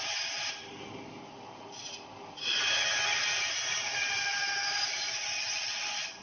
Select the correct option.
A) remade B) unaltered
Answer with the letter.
B